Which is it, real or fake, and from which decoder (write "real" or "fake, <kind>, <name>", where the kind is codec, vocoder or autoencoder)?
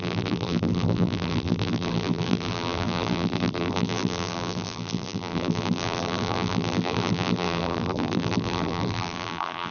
fake, vocoder, BigVGAN v2